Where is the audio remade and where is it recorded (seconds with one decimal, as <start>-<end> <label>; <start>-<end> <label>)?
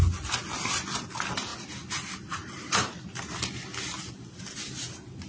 0.0-5.3 recorded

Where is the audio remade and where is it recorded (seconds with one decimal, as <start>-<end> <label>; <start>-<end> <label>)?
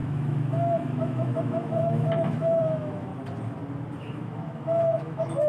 0.0-3.1 remade; 3.1-4.0 recorded; 4.0-5.5 remade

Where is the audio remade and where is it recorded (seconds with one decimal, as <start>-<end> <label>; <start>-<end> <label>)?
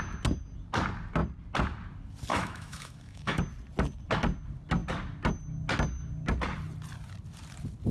0.0-2.3 recorded; 2.3-3.4 remade; 3.4-7.9 recorded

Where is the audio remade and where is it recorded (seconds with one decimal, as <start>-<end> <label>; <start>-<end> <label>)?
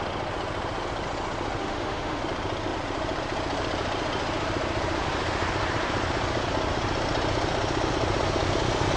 0.0-1.6 recorded; 1.6-2.2 remade; 2.2-9.0 recorded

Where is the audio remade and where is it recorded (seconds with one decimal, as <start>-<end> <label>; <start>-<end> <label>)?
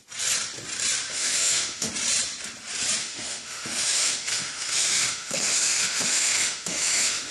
0.0-1.1 recorded; 1.1-1.9 remade; 1.9-3.0 recorded; 3.0-7.3 remade